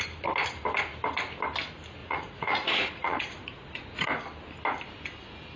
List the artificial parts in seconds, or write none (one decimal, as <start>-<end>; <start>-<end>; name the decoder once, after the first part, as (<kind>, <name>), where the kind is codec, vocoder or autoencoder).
2.0-4.1 (vocoder, Vocos)

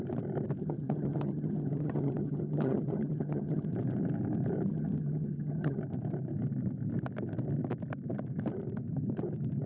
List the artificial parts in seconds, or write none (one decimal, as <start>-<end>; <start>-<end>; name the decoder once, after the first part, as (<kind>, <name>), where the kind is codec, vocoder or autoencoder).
0.6-3.7 (vocoder, HiFi-GAN); 4.7-5.8

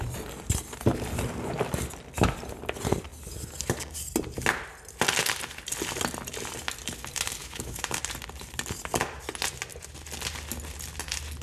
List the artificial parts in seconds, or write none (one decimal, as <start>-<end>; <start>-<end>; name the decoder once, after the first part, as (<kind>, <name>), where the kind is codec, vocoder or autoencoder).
7.4-8.0 (autoencoder, DAC-VAE)

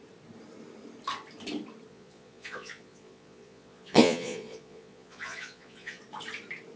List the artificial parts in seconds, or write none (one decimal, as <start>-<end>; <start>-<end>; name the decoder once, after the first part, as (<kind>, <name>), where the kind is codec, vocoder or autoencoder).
1.9-6.0 (vocoder, Vocos)

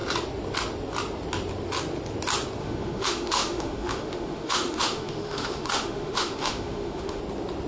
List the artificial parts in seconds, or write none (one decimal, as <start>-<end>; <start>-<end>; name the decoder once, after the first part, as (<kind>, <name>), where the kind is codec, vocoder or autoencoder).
2.6-7.2 (autoencoder, DAC-VAE)

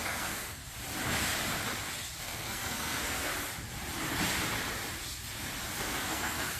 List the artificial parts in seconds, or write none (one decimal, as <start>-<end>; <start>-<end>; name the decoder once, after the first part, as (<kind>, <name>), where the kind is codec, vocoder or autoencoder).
0.0-0.6 (codec, SNAC); 2.2-3.3; 5.8-6.6

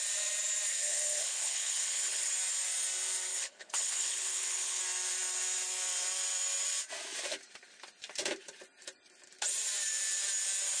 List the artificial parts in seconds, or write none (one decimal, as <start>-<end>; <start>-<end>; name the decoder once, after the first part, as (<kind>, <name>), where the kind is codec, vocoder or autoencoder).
0.7-2.3 (codec, HILCodec); 3.3-4.8

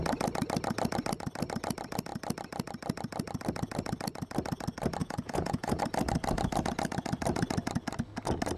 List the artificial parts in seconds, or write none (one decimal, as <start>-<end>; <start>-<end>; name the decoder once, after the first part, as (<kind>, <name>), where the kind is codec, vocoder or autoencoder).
5.0-5.8 (vocoder, Vocos)